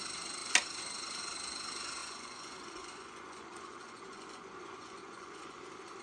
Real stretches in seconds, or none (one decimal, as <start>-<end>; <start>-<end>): 0.0-2.0; 5.6-6.0

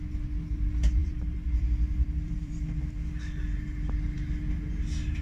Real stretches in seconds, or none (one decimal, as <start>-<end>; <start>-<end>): 0.0-1.0; 2.8-5.2

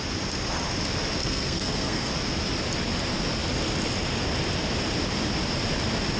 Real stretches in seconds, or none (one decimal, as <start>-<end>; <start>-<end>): 0.0-1.2; 2.1-6.2

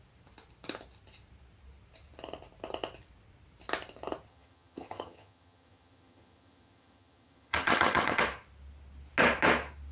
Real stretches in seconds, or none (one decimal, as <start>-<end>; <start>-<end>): 0.0-4.3; 8.2-9.9

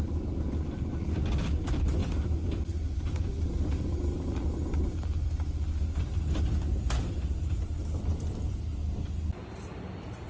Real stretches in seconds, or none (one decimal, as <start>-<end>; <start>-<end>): 0.0-2.0; 4.4-8.1; 8.8-10.3

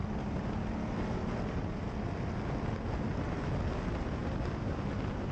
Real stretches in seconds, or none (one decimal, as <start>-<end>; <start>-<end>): 0.0-5.3